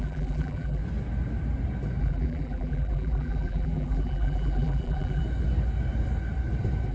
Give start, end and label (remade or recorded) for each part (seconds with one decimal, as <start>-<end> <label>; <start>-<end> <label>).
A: 0.0-0.8 remade; 0.8-2.0 recorded; 2.0-5.2 remade; 5.2-6.9 recorded